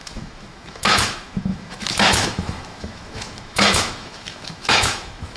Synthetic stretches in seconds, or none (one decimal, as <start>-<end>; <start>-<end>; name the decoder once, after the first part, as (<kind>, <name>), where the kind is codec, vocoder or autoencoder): 0.0-5.4 (autoencoder, DAC-VAE)